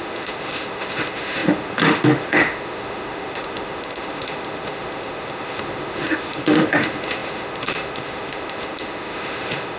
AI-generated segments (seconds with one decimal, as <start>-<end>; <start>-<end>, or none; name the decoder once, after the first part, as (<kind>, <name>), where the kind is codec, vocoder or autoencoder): 0.0-9.8 (autoencoder, DAC-VAE)